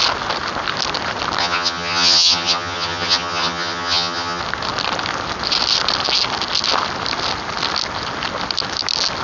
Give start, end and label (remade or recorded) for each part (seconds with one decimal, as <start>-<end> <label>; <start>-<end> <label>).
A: 0.0-1.4 recorded; 1.4-4.4 remade; 4.4-9.2 recorded